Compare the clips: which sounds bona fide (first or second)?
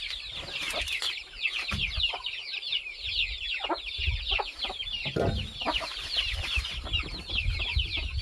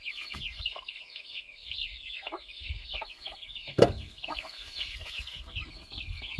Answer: first